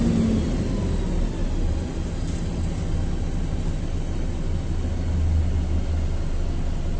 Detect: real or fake real